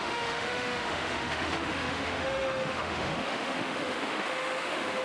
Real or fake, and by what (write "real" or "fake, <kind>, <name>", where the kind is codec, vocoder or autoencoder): fake, autoencoder, DAC-VAE